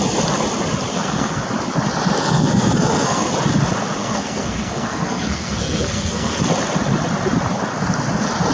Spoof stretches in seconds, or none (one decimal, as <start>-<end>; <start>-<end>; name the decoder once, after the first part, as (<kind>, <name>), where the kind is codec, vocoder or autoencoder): 0.9-1.4 (codec, SNAC); 2.2-3.3; 4.0-6.4